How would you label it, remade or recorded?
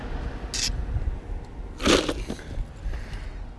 recorded